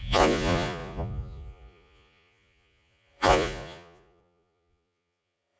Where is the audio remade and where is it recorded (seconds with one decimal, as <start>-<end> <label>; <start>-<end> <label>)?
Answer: 0.0-5.6 remade